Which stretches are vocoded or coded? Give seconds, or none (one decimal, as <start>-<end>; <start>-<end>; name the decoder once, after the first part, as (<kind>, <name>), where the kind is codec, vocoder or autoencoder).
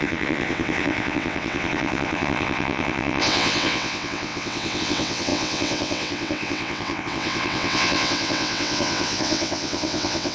0.0-10.3 (vocoder, WaveNeXt)